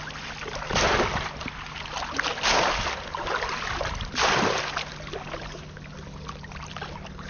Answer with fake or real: real